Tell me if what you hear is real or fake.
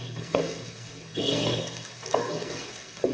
fake